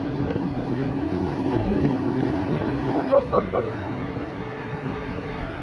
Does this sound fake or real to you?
fake